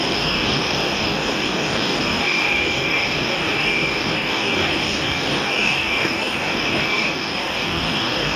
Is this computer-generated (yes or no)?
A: yes